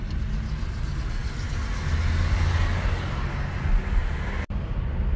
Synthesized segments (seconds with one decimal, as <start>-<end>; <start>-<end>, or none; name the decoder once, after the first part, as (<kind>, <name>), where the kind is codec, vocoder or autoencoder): none